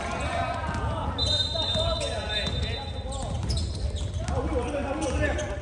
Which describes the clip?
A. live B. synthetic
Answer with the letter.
A